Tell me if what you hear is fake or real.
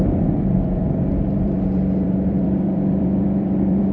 fake